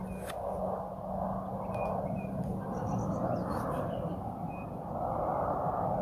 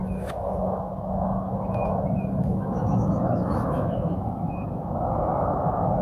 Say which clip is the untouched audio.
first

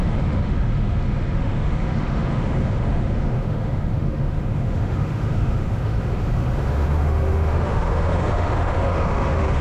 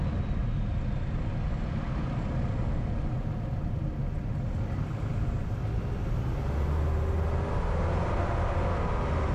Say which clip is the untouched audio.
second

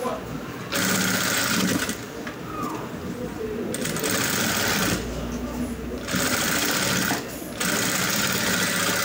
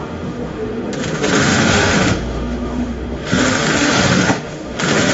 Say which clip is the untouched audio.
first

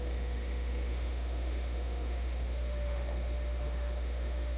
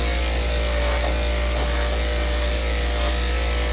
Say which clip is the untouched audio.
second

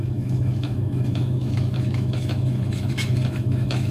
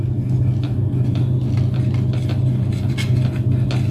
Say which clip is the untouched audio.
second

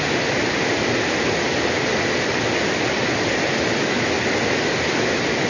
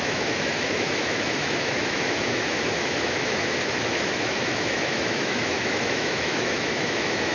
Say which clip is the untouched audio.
first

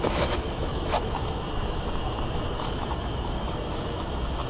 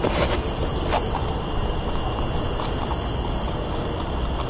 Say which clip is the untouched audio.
second